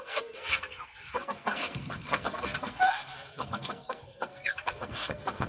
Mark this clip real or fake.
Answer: fake